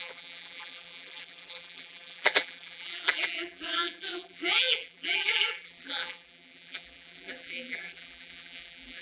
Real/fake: fake